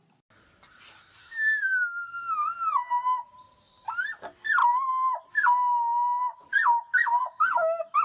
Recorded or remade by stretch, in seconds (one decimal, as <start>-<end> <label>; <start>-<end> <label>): 0.0-1.2 recorded; 1.2-2.4 remade; 2.4-8.0 recorded